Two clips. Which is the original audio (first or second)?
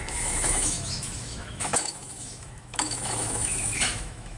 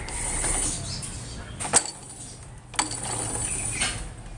second